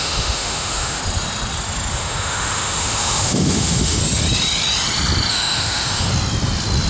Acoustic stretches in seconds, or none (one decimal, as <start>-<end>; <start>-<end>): 1.0-1.9; 4.0-5.3; 6.1-6.9